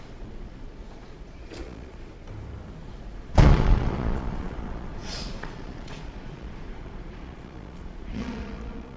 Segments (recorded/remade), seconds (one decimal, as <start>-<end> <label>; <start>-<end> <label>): 0.0-2.1 remade; 2.1-2.8 recorded; 2.8-9.0 remade